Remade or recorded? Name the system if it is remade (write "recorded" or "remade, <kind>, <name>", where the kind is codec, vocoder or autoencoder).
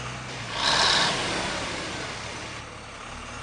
recorded